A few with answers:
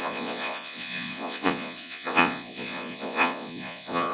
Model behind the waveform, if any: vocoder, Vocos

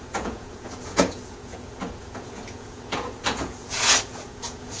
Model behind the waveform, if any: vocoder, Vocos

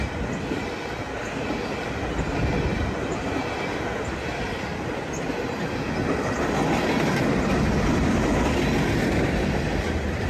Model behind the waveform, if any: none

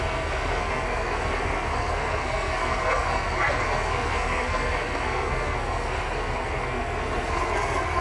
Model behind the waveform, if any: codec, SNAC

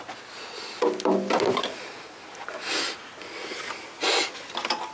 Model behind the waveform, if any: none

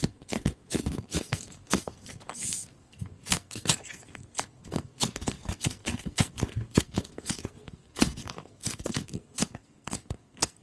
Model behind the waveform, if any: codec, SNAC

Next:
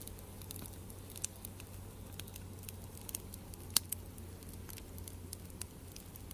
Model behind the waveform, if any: none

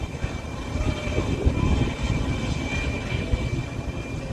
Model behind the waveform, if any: none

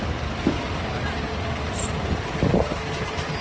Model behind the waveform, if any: none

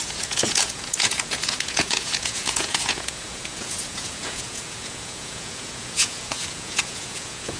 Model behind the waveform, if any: vocoder, Vocos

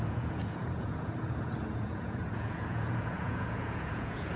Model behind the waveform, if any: vocoder, Vocos